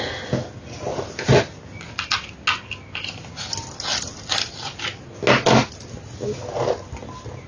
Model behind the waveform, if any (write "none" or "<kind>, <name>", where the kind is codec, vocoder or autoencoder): none